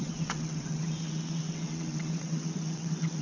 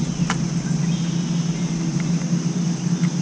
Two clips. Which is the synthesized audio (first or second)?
first